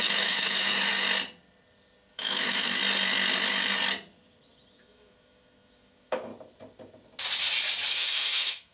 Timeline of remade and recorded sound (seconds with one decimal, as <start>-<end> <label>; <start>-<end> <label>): 0.0-0.9 remade; 0.9-2.1 recorded; 2.1-2.8 remade; 2.8-4.8 recorded; 4.8-6.3 remade; 6.3-7.9 recorded; 7.9-8.7 remade